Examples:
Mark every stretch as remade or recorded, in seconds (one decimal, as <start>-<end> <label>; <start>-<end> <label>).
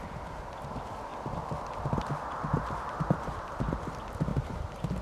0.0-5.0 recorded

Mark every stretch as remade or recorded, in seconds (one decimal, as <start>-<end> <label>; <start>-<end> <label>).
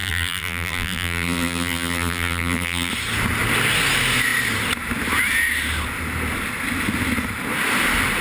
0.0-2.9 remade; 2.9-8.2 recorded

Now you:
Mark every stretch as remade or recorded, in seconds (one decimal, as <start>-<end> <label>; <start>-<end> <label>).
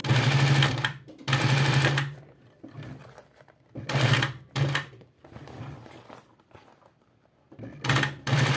0.0-0.7 recorded; 0.7-8.6 remade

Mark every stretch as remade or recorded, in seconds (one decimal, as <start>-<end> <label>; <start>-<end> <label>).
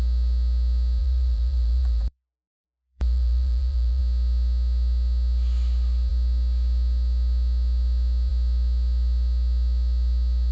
0.0-1.0 recorded; 1.0-4.0 remade; 4.0-10.5 recorded